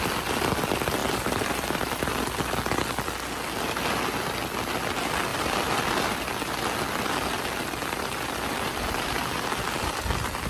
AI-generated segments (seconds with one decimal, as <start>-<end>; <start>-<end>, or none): 1.0-2.1; 5.3-5.9; 7.8-10.0